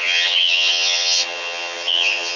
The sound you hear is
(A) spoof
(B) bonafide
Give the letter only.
A